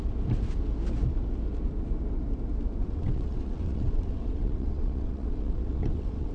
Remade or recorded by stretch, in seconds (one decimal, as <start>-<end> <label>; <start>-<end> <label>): 0.0-2.8 recorded; 2.8-6.3 remade